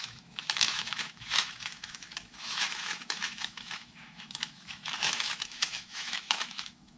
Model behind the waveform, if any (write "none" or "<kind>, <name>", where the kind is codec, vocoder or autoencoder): autoencoder, DAC-VAE